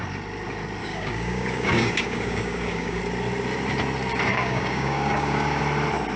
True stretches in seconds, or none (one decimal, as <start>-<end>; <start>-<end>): 0.0-0.8; 3.0-4.3; 5.6-6.2